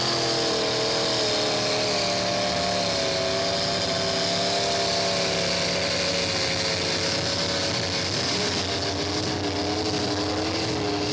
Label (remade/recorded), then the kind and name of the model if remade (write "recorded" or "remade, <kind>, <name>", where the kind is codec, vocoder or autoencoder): recorded